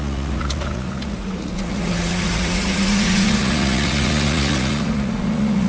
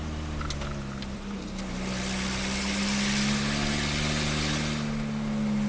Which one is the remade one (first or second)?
first